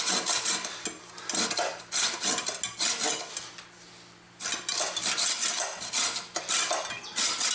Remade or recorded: recorded